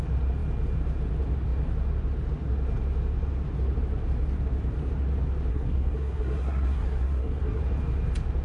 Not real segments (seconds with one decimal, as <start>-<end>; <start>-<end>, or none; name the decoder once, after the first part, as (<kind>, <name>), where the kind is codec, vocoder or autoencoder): 5.5-7.6 (codec, SNAC)